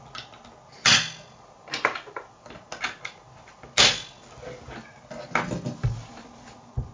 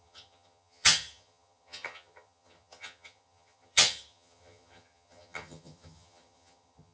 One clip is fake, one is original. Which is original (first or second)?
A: first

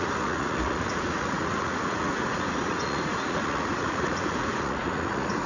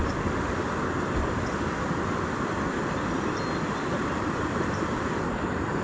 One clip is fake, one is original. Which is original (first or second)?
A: second